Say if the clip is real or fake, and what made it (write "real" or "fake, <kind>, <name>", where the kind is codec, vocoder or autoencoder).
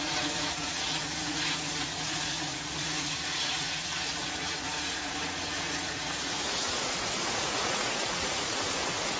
fake, vocoder, Vocos